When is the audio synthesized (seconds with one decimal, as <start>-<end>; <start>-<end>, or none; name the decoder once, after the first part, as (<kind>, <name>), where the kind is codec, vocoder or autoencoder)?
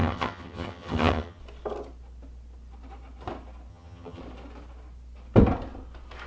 0.0-1.4 (vocoder, HiFi-GAN); 3.7-4.2